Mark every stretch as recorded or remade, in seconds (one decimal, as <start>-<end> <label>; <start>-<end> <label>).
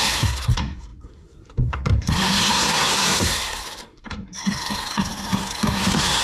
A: 0.0-6.2 remade